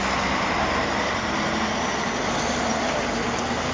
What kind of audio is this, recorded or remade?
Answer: recorded